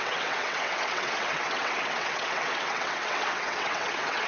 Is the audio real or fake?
fake